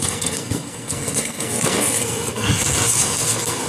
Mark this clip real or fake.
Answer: fake